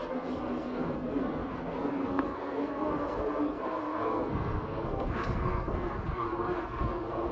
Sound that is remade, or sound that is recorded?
remade